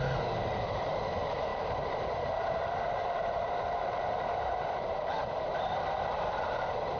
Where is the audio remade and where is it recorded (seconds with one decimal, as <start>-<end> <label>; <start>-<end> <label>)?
0.0-1.5 recorded; 1.5-5.1 remade; 5.1-5.5 recorded; 5.5-6.6 remade; 6.6-7.0 recorded